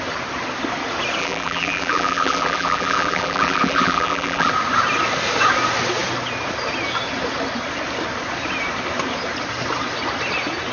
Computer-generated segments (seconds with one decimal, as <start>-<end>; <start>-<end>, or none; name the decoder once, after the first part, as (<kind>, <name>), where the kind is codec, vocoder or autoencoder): 1.2-4.5 (vocoder, BigVGAN v2)